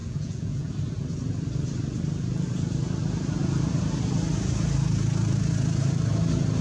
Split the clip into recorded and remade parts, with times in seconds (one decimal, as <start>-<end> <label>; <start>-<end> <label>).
0.0-0.7 remade; 0.7-6.6 recorded

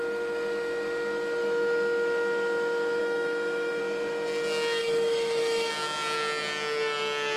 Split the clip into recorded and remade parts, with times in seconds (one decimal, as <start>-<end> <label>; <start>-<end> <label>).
0.0-3.0 recorded; 3.0-3.8 remade; 3.8-4.8 recorded; 4.8-5.7 remade; 5.7-7.4 recorded

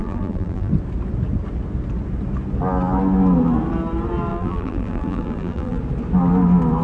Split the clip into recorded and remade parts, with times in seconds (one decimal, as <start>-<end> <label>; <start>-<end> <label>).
0.0-0.7 remade; 0.7-4.3 recorded; 4.3-5.8 remade; 5.8-6.8 recorded

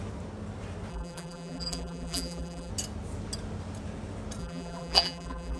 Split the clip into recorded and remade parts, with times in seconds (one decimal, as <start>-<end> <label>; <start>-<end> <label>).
0.0-0.9 recorded; 0.9-2.7 remade; 2.7-4.4 recorded; 4.4-5.6 remade

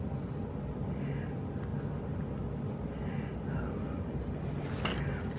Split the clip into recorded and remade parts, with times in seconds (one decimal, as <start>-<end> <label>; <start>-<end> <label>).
0.0-5.4 recorded

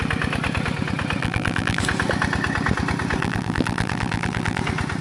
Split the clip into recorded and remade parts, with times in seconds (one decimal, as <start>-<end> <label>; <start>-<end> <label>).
0.0-1.2 recorded; 1.2-1.8 remade; 1.8-3.2 recorded; 3.2-4.6 remade; 4.6-5.0 recorded

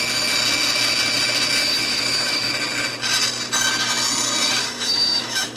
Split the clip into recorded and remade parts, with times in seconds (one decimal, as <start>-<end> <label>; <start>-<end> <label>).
0.0-1.6 recorded; 1.6-2.5 remade; 2.5-4.6 recorded; 4.6-5.6 remade